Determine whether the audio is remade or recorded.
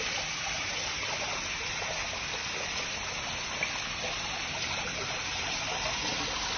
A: recorded